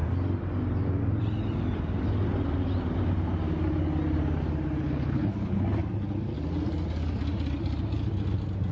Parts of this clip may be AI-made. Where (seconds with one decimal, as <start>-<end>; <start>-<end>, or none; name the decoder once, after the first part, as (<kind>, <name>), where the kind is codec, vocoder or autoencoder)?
4.8-5.6 (codec, HILCodec)